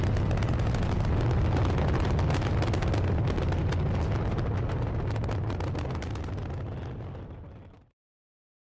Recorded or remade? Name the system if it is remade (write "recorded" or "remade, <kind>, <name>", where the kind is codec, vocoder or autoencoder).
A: recorded